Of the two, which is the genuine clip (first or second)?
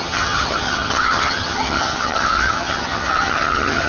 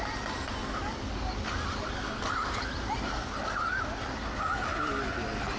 second